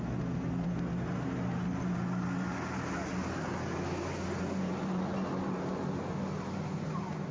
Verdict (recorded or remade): recorded